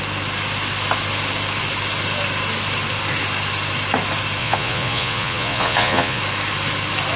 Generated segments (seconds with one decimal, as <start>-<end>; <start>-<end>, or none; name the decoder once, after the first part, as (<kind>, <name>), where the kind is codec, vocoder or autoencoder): 4.4-6.2 (vocoder, Vocos)